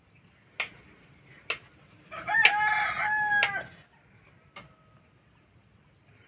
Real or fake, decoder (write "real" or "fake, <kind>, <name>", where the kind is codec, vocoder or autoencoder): real